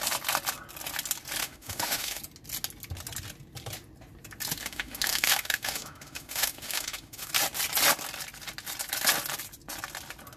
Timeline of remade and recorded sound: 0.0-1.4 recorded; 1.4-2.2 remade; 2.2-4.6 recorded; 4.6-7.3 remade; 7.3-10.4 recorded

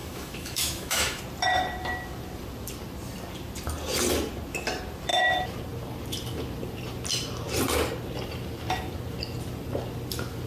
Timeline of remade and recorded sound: 0.0-1.2 remade; 1.2-10.5 recorded

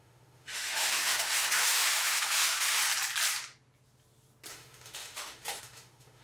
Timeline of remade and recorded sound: 0.0-2.8 remade; 2.8-4.5 recorded; 4.5-6.2 remade

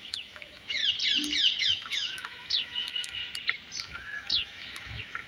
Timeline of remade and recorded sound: 0.0-0.8 remade; 0.8-1.6 recorded; 1.6-3.2 remade; 3.2-3.8 recorded; 3.8-5.3 remade

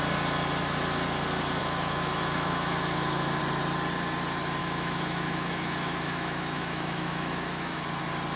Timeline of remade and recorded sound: 0.0-1.6 recorded; 1.6-3.4 remade; 3.4-4.6 recorded; 4.6-7.8 remade; 7.8-8.4 recorded

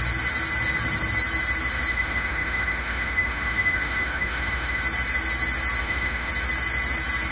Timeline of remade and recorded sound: 0.0-1.9 recorded; 1.9-4.8 remade; 4.8-5.8 recorded; 5.8-6.3 remade; 6.3-7.3 recorded

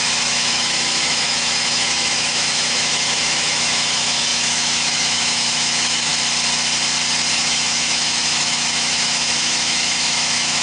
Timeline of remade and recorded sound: 0.0-6.1 remade; 6.1-7.3 recorded; 7.3-10.6 remade